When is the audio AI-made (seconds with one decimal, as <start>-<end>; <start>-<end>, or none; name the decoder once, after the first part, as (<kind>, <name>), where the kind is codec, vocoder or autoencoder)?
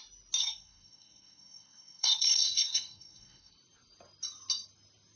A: 0.4-3.5 (codec, SNAC)